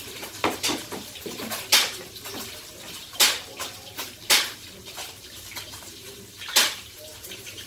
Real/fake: fake